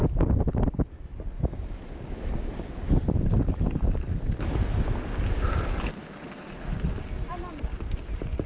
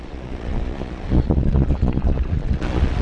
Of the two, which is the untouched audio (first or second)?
first